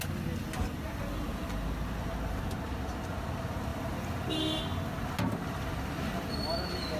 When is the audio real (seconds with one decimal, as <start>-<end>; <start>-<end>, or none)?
0.0-7.0